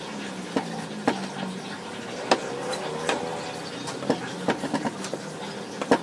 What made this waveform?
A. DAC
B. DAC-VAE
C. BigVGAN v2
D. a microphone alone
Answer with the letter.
D